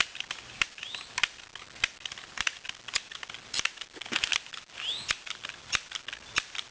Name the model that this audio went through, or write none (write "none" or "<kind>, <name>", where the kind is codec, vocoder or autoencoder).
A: none